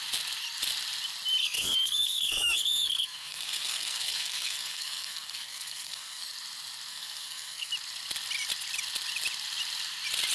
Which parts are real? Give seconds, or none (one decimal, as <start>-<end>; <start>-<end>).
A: 0.0-1.4; 6.2-6.9; 7.7-10.3